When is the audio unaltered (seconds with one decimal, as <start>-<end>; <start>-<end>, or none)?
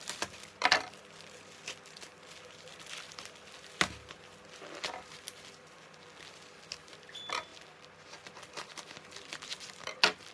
0.0-10.3